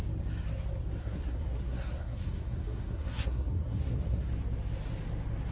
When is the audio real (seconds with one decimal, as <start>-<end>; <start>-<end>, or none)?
0.0-1.0; 4.3-5.5